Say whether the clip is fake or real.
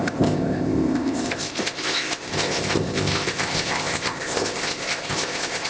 fake